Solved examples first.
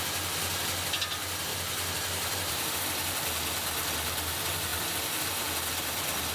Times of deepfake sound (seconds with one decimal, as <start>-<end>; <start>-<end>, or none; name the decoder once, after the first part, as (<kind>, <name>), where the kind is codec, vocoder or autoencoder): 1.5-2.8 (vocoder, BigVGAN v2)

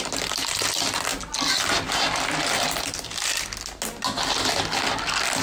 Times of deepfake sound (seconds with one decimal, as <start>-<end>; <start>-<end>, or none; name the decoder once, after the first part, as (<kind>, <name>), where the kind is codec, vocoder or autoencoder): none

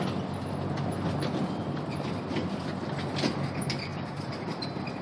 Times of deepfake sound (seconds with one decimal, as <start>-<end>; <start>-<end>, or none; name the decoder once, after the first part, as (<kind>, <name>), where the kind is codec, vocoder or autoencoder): 3.9-5.0 (vocoder, BigVGAN v2)

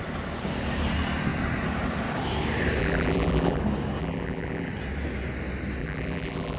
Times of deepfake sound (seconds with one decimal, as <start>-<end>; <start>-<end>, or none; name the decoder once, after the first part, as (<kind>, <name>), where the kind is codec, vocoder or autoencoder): 2.8-3.6 (vocoder, BigVGAN v2); 4.0-4.7; 5.8-6.6

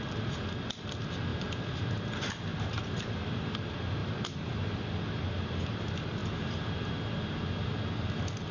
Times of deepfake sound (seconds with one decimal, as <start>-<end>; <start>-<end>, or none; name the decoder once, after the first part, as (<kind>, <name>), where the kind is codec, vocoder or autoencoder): 1.3-2.1 (vocoder, BigVGAN v2); 2.5-3.2; 4.0-4.8; 6.2-6.7

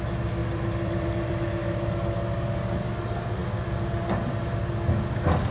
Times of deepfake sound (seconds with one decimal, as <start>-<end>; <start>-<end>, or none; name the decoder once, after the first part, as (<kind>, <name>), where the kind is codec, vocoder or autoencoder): 0.4-1.3 (vocoder, BigVGAN v2); 3.4-4.4